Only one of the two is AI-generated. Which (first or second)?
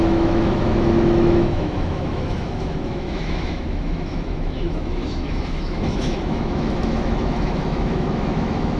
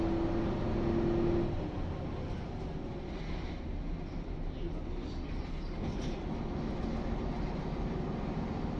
first